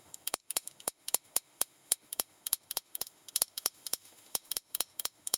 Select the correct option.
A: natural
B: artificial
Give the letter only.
B